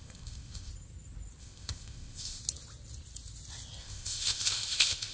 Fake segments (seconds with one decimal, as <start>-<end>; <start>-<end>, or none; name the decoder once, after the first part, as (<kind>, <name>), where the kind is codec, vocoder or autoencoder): 0.0-0.7 (codec, ZipCodec); 1.4-2.4; 3.8-5.1